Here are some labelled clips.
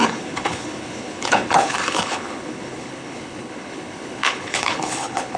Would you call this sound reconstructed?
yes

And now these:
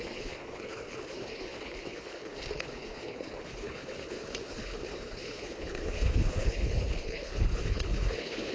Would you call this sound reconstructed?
yes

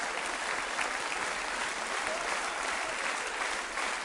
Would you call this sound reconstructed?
no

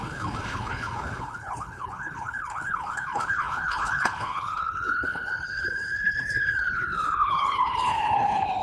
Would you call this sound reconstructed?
yes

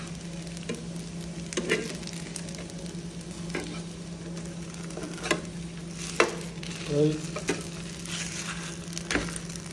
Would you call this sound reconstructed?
no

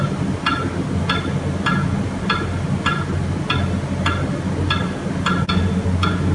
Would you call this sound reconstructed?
no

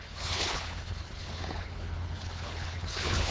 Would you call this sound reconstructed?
yes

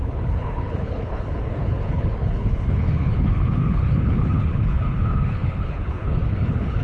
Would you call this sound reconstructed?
yes